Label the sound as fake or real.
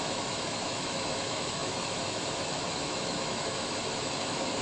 fake